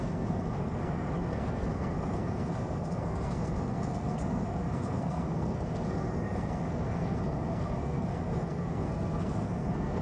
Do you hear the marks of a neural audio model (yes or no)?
yes